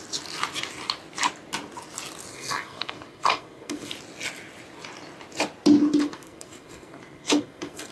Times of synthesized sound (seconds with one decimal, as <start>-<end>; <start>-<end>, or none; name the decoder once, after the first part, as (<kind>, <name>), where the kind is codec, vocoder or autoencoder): 2.3-3.9 (codec, SNAC); 5.9-7.9